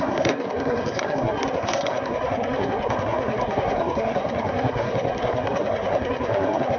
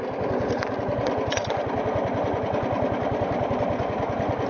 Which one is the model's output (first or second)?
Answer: first